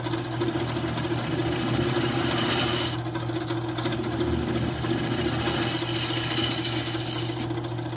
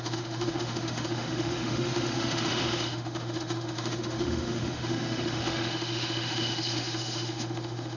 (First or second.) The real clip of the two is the first